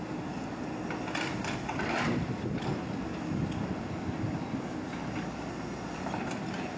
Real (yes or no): yes